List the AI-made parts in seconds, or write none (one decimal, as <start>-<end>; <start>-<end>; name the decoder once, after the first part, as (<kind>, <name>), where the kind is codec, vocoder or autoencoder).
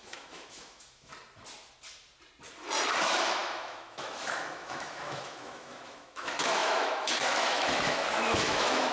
0.0-1.1 (autoencoder, DAC-VAE); 3.0-8.9